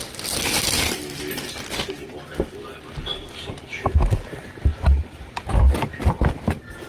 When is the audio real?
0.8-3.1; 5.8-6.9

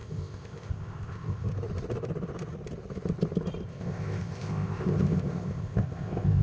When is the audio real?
1.5-3.7

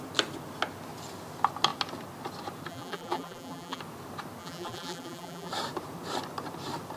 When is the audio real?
0.0-2.7; 3.8-4.4; 5.5-7.0

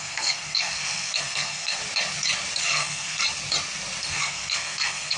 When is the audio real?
1.8-2.6; 3.2-4.0

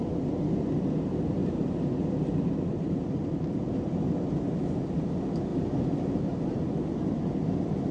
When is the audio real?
0.0-1.4; 4.0-5.5; 6.2-7.9

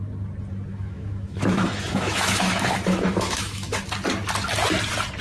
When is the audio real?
0.0-0.7; 3.8-5.2

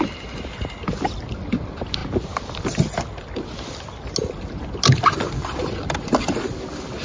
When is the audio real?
0.0-7.0